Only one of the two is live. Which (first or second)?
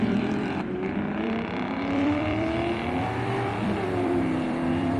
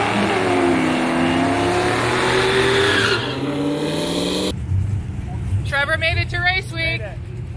second